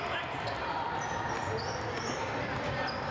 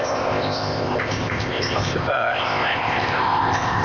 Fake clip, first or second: second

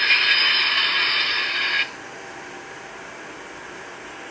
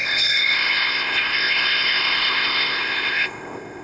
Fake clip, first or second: second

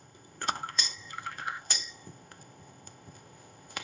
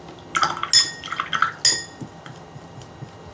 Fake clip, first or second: first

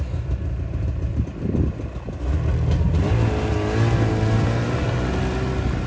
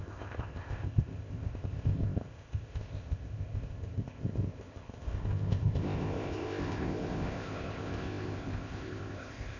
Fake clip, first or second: second